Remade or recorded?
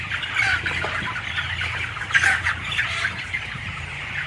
recorded